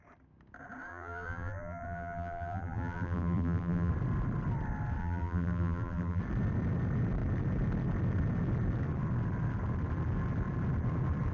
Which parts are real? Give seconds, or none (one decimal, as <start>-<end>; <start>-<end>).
0.0-0.9; 3.9-5.0; 6.2-11.3